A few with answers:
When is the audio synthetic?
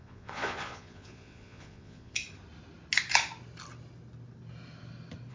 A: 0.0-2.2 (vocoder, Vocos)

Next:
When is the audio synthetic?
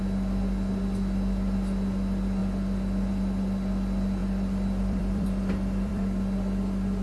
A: 4.2-6.0 (vocoder, BigVGAN v2)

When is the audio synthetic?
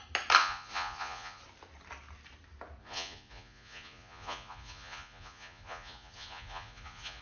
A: 0.4-1.4 (vocoder, Vocos); 2.8-7.2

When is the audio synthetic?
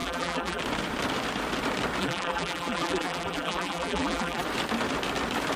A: 0.0-0.6 (vocoder, BigVGAN v2); 2.0-4.4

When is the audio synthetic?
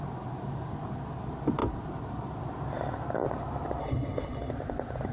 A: 3.8-4.5 (codec, HILCodec)